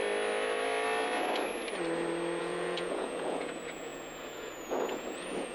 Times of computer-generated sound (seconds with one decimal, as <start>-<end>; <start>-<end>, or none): 2.4-5.5